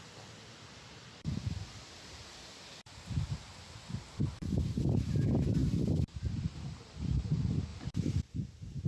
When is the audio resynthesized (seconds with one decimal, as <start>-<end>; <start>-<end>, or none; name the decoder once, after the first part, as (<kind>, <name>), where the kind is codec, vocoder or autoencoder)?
0.0-8.9 (vocoder, BigVGAN v2)